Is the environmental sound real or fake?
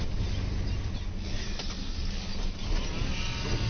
real